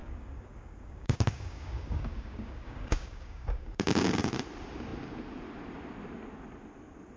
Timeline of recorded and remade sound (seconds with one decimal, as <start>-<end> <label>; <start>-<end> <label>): 0.0-4.3 remade; 4.3-7.2 recorded